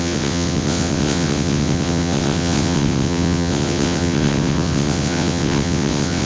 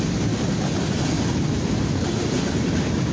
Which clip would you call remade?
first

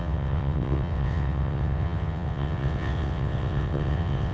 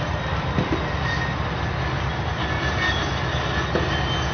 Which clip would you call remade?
first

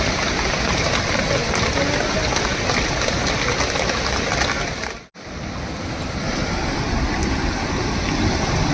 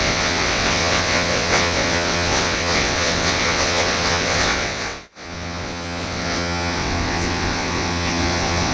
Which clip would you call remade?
second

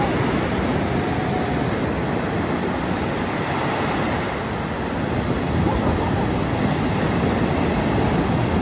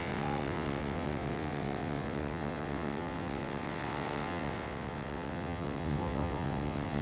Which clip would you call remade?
second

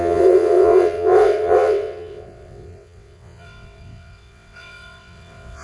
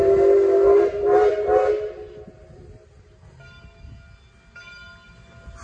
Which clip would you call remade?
first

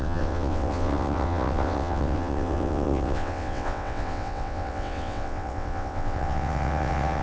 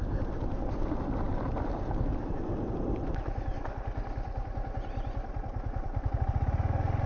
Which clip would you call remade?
first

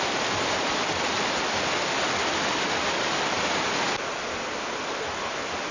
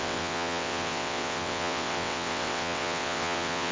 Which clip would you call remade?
second